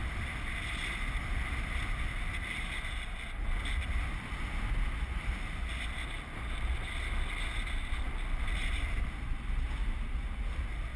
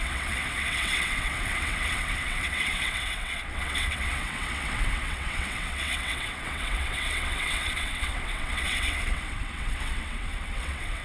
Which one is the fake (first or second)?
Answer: second